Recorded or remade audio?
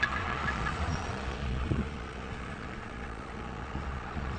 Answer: remade